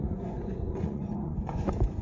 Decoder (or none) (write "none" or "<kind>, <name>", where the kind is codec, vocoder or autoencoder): vocoder, Vocos